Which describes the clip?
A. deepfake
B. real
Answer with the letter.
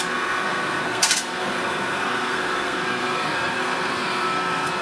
A